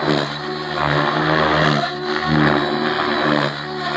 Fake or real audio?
real